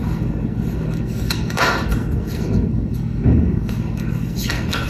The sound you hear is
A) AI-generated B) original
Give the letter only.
A